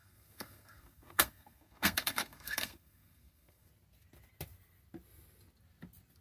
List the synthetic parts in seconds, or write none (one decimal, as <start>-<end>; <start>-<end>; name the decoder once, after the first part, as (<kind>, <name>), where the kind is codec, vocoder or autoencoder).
0.0-3.7 (codec, SNAC)